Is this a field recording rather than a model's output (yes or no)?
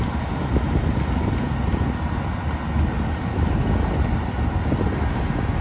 yes